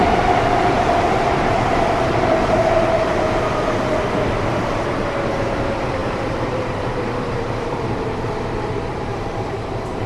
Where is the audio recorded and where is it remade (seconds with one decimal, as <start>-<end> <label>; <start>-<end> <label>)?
0.0-10.1 remade